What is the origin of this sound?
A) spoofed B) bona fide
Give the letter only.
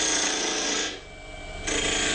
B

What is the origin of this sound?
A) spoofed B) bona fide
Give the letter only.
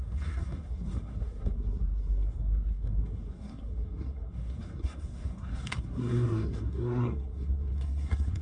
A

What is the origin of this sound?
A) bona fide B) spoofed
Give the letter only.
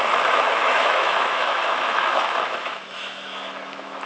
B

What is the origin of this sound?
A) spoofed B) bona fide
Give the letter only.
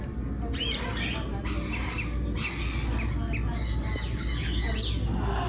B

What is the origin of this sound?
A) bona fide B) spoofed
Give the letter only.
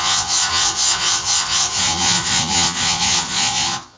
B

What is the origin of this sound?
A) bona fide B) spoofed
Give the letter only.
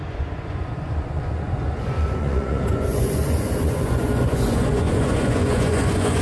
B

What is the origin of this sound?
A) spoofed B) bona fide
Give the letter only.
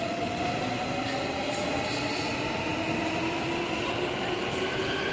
B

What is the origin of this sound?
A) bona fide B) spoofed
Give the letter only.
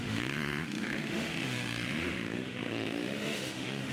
B